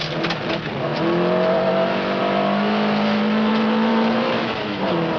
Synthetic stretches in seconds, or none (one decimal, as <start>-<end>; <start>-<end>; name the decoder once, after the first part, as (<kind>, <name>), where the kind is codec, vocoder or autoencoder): 3.9-4.8 (autoencoder, DAC-VAE)